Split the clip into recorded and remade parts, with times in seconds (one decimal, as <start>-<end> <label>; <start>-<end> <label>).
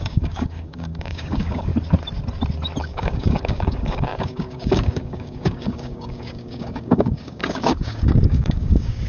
0.0-1.7 remade; 1.7-2.8 recorded; 2.8-9.1 remade